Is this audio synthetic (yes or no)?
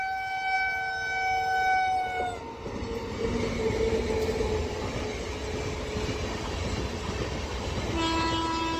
no